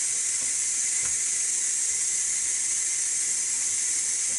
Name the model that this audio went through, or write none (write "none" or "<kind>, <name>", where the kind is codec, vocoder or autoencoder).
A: none